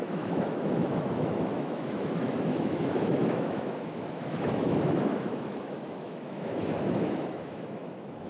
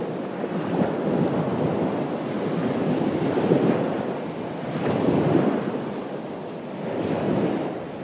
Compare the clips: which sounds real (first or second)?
second